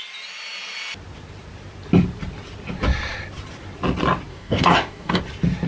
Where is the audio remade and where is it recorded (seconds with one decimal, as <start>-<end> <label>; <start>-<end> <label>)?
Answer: 0.0-4.3 recorded; 4.3-5.2 remade; 5.2-5.7 recorded